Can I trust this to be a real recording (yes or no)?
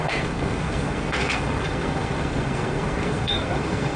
no